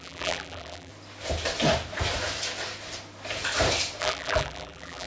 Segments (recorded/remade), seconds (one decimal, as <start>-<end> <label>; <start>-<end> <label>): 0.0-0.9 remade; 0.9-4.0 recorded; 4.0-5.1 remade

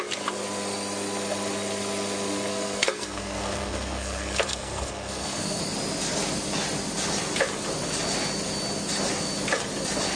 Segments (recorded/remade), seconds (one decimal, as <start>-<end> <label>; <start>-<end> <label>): 0.0-2.5 recorded; 2.5-5.6 remade; 5.6-10.2 recorded

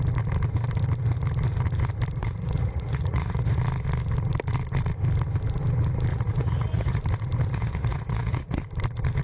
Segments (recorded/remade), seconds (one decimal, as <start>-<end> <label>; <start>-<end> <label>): 0.0-2.2 recorded; 2.2-3.6 remade; 3.6-6.1 recorded; 6.1-7.0 remade; 7.0-7.5 recorded; 7.5-8.6 remade; 8.6-9.2 recorded